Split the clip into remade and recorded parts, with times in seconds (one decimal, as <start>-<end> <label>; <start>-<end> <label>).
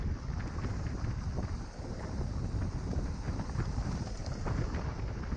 0.0-5.4 recorded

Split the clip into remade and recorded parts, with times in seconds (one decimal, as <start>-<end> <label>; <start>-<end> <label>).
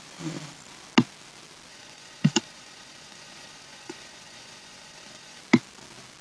0.0-1.7 recorded; 1.7-5.4 remade; 5.4-6.2 recorded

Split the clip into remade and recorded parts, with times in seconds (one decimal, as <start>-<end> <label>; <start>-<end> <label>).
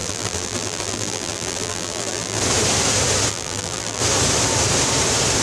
0.0-2.4 remade; 2.4-3.3 recorded; 3.3-4.0 remade; 4.0-5.4 recorded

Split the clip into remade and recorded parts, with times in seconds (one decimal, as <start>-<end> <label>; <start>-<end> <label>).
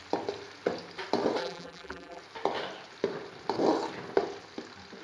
0.0-1.4 recorded; 1.4-2.2 remade; 2.2-5.0 recorded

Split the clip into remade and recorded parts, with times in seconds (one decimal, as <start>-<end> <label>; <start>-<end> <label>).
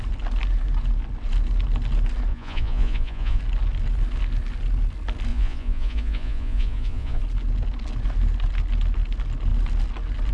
0.0-2.3 recorded; 2.3-3.4 remade; 3.4-5.3 recorded; 5.3-7.2 remade; 7.2-10.3 recorded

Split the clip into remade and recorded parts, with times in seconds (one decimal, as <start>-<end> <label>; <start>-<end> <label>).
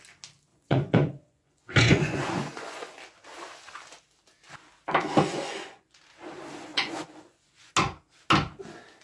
0.0-0.5 recorded; 0.5-3.0 remade; 3.0-5.3 recorded; 5.3-6.0 remade; 6.0-6.7 recorded; 6.7-7.7 remade; 7.7-9.0 recorded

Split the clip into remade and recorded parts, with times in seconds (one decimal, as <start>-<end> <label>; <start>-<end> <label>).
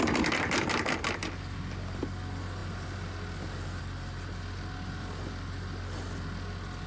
0.0-6.9 recorded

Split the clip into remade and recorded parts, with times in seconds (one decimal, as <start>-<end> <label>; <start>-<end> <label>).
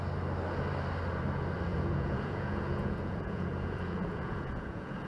0.0-1.7 recorded; 1.7-5.1 remade